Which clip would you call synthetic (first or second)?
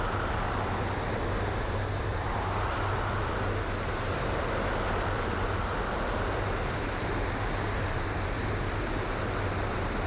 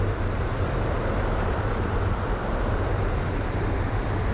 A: second